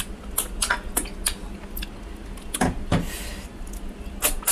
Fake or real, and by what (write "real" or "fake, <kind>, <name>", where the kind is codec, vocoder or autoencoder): real